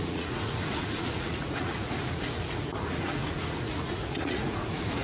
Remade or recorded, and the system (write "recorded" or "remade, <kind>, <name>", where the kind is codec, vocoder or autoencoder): remade, vocoder, Vocos